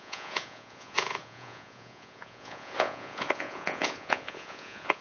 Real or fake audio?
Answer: fake